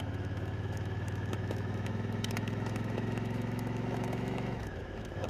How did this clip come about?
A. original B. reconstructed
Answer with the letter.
B